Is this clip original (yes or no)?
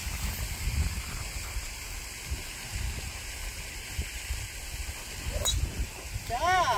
yes